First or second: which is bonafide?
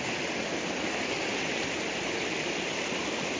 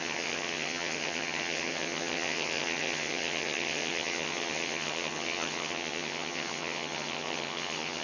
first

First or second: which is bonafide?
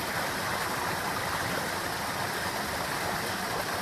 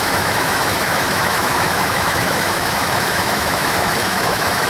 first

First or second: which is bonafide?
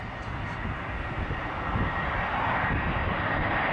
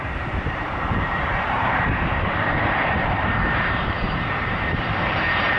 first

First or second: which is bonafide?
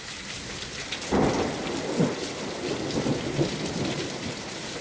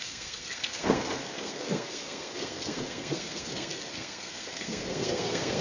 first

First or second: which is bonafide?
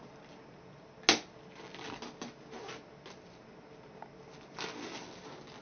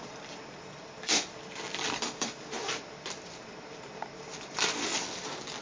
first